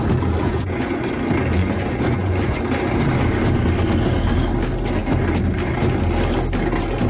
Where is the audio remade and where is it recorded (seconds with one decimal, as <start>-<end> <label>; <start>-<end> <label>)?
0.0-0.4 recorded; 0.4-1.1 remade; 1.1-1.6 recorded; 1.6-2.6 remade; 2.6-7.1 recorded